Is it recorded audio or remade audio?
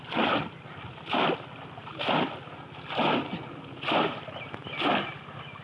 recorded